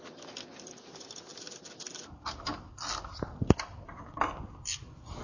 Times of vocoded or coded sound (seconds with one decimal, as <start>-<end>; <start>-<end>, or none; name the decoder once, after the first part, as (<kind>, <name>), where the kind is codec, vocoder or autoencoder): none